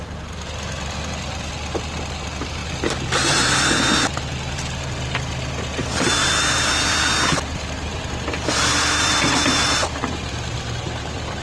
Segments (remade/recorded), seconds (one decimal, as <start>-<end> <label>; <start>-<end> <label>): 0.0-11.4 recorded